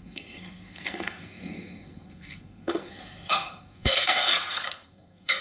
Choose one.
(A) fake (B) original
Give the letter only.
A